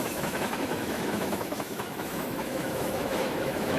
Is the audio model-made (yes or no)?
yes